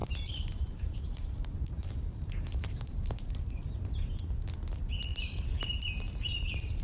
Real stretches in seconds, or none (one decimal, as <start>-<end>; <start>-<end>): 3.9-5.1